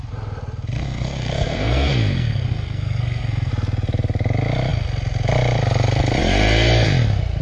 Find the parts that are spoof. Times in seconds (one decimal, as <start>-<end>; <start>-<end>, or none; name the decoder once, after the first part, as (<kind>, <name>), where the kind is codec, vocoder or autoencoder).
0.8-3.5 (codec, SNAC)